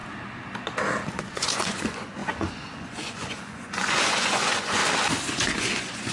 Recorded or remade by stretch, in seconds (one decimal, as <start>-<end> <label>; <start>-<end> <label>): 0.0-1.2 recorded; 1.2-4.8 remade; 4.8-5.3 recorded; 5.3-6.1 remade